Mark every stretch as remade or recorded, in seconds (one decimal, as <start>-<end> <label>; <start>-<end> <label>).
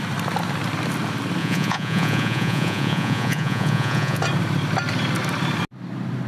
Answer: 0.0-1.4 recorded; 1.4-4.2 remade; 4.2-6.3 recorded